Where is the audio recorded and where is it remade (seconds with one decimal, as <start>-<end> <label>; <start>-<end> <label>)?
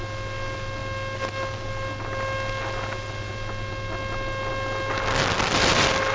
0.0-6.1 recorded